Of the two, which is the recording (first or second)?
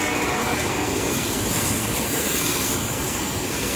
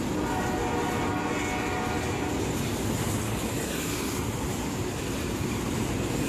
second